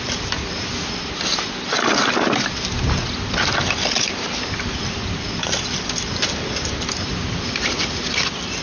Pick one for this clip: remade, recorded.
recorded